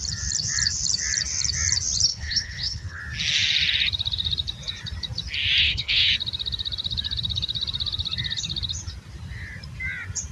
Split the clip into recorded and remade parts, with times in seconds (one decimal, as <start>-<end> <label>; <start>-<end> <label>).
0.0-2.1 recorded; 2.1-3.0 remade; 3.0-5.6 recorded; 5.6-6.1 remade; 6.1-10.3 recorded